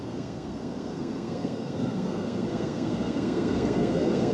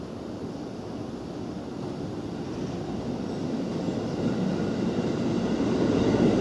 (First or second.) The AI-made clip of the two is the first